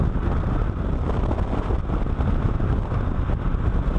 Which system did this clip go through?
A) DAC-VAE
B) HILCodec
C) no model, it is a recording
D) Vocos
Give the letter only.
C